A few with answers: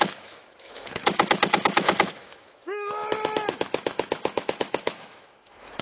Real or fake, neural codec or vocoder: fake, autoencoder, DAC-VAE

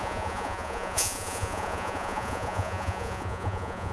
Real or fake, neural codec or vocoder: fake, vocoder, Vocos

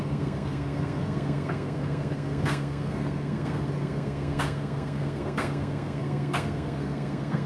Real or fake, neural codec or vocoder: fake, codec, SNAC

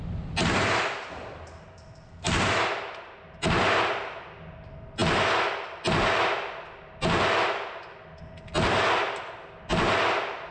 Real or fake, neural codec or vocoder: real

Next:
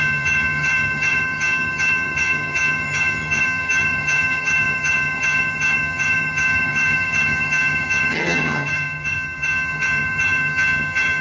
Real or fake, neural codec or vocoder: fake, vocoder, HiFi-GAN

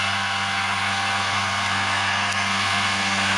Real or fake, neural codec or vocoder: fake, codec, SNAC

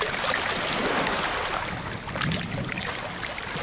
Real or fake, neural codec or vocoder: real